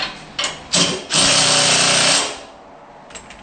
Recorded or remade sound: recorded